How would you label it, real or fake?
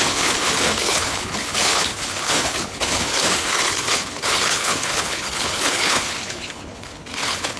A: fake